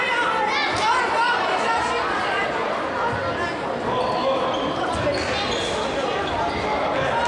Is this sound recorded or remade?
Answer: recorded